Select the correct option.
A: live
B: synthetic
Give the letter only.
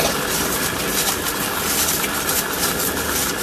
A